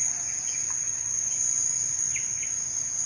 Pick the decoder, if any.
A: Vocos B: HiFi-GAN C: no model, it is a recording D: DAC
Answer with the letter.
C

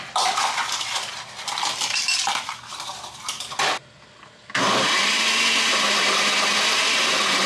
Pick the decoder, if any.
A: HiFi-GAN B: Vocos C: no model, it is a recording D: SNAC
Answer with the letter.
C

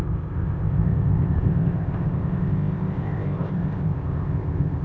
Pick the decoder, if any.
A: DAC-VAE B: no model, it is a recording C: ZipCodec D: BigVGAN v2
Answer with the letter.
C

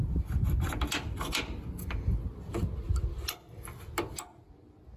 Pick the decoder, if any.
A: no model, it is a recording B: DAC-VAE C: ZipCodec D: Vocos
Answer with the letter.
A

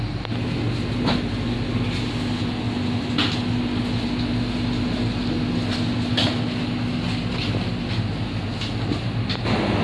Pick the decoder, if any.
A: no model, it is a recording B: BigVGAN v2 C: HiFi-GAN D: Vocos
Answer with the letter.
A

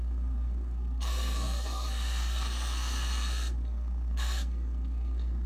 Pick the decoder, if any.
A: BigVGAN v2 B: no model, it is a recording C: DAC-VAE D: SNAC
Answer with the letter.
D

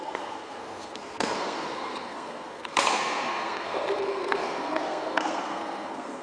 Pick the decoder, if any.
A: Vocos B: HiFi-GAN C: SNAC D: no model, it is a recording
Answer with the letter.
C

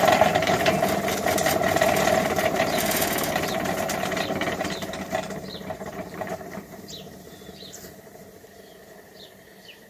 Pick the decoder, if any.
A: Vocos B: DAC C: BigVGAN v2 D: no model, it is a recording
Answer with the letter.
C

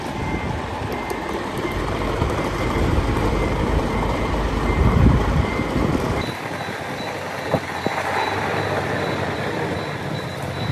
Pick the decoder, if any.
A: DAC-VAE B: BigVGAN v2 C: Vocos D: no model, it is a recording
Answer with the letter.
B